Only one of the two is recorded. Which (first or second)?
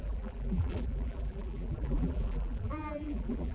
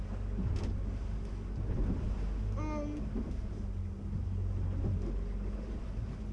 second